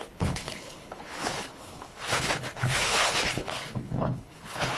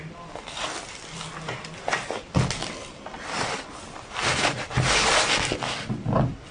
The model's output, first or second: first